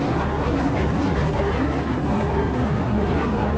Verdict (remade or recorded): remade